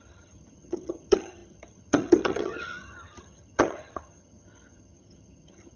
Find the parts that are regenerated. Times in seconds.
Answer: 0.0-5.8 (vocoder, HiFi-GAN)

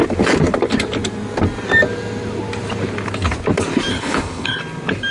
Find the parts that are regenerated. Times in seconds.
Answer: 3.9-4.6 (codec, HILCodec)

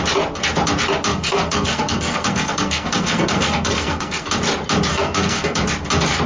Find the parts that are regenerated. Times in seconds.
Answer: 1.1-4.3 (codec, SNAC); 4.9-5.6

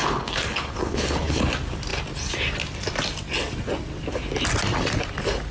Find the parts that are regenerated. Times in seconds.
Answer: 0.0-1.4 (codec, HILCodec)